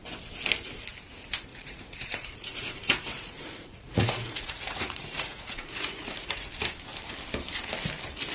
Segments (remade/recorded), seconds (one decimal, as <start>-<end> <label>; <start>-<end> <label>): 0.0-1.5 recorded; 1.5-6.5 remade; 6.5-8.3 recorded